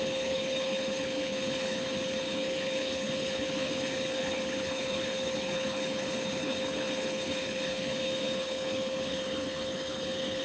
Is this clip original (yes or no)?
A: no